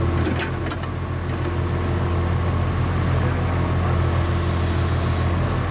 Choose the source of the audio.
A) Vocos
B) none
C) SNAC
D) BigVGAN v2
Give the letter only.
B